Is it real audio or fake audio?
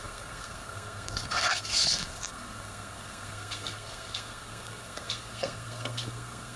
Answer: fake